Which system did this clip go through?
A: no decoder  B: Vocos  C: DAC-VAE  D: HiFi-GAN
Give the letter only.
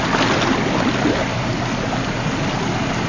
A